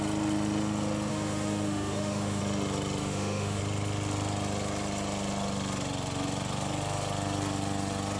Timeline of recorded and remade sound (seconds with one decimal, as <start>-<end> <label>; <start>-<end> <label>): 0.0-1.1 recorded; 1.1-2.4 remade; 2.4-3.0 recorded; 3.0-3.6 remade; 3.6-8.2 recorded